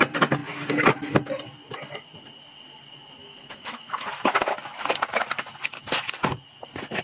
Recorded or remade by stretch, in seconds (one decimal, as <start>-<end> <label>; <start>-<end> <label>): 0.0-3.2 recorded; 3.2-3.9 remade; 3.9-7.0 recorded